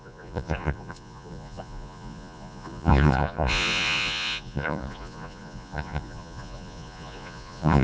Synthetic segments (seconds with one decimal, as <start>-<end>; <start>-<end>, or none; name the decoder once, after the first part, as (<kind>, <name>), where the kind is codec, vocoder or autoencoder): 0.0-7.8 (vocoder, Vocos)